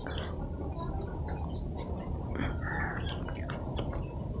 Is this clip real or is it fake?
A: real